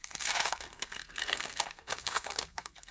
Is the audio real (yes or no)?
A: no